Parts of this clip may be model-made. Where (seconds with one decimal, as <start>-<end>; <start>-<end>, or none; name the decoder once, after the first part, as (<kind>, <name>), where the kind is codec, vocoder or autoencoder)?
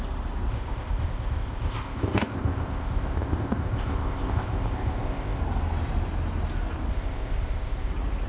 0.5-5.4 (codec, ZipCodec); 6.9-7.9